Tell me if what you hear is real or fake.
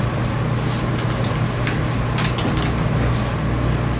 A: real